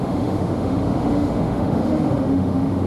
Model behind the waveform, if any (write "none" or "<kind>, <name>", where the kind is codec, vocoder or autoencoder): autoencoder, DAC-VAE